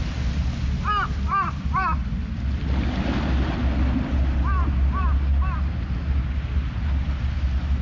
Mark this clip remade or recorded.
recorded